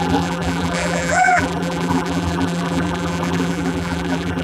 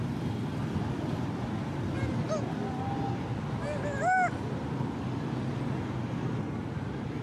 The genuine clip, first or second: second